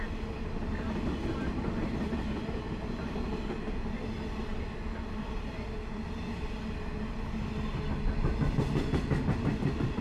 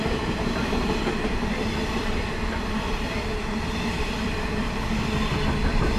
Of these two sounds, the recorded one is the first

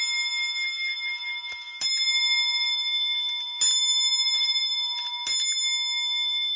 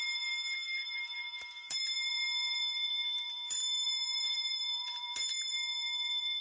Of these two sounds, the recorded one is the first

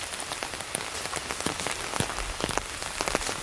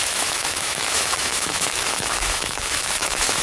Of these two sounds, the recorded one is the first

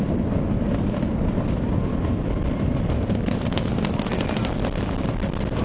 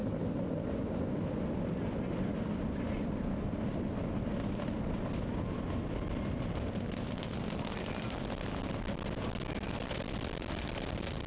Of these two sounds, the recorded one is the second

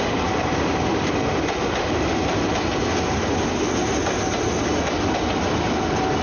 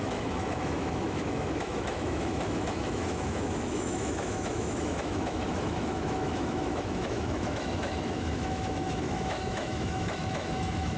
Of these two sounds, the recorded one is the first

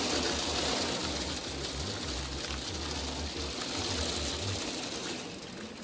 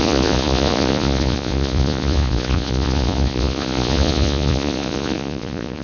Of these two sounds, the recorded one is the first